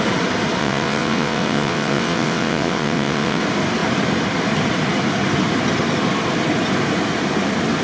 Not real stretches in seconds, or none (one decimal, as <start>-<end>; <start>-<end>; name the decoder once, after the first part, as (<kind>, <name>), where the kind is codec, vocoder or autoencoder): 0.6-3.4 (vocoder, WaveNeXt)